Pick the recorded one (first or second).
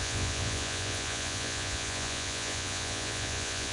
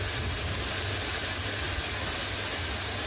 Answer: second